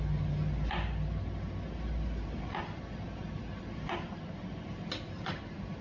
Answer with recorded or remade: recorded